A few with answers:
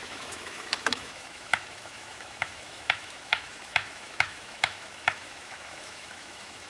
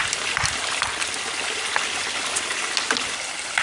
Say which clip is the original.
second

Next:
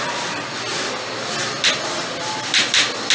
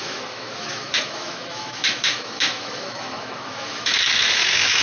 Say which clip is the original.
first